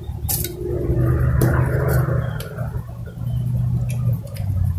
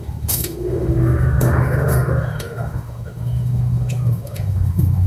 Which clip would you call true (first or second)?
first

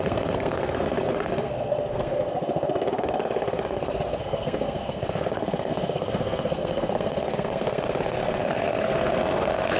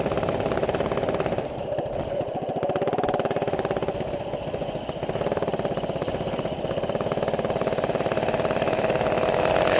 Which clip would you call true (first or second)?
second